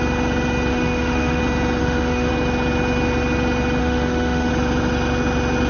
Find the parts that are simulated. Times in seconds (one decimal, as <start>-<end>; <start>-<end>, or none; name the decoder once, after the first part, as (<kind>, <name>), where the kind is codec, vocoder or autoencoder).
0.7-1.4 (autoencoder, DAC-VAE); 1.8-2.3; 3.8-4.5